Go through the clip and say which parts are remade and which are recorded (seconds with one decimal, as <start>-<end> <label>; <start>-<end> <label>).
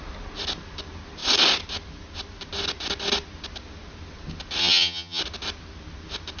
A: 0.0-4.6 recorded; 4.6-5.2 remade; 5.2-6.4 recorded